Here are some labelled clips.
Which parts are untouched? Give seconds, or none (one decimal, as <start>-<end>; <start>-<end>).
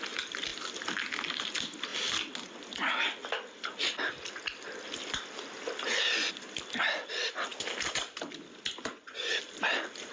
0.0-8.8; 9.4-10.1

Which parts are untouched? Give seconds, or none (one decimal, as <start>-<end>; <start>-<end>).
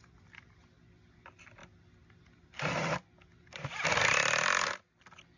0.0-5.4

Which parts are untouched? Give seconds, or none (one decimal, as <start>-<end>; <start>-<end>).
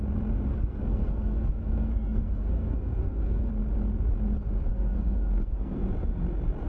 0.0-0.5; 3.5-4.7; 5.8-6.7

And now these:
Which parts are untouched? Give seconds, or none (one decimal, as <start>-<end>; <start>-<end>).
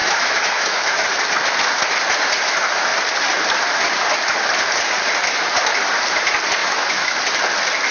1.1-6.6; 7.2-7.9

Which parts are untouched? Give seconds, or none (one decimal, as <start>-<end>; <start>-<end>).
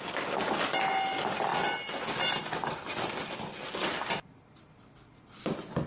0.0-5.9